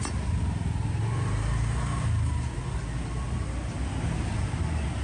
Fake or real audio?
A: real